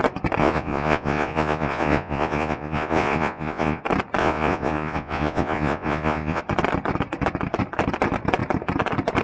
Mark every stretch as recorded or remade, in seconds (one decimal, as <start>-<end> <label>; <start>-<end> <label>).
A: 0.0-0.4 recorded; 0.4-3.8 remade; 3.8-4.2 recorded; 4.2-6.4 remade; 6.4-9.2 recorded